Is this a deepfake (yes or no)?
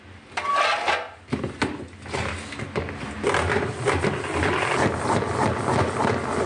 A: no